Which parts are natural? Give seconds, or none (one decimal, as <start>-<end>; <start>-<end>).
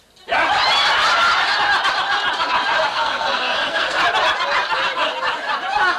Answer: 0.0-2.9; 4.0-6.0